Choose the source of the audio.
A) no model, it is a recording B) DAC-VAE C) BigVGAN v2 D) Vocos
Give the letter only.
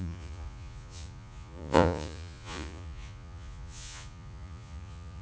D